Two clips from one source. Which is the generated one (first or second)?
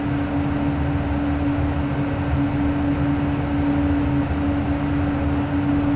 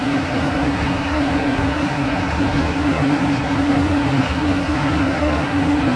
second